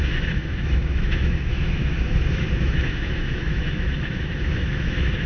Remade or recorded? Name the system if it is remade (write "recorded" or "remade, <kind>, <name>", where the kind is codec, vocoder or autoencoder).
remade, autoencoder, DAC-VAE